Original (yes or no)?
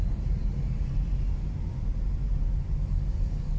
yes